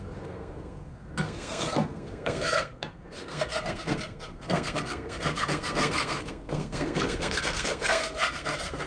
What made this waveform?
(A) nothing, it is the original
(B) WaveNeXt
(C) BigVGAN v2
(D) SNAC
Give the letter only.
D